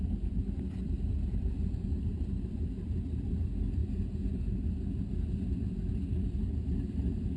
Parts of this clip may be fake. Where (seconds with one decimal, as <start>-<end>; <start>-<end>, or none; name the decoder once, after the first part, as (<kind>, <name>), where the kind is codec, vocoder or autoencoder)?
0.0-3.8 (vocoder, BigVGAN v2); 6.1-7.4